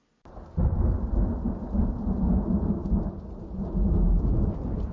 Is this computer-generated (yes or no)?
no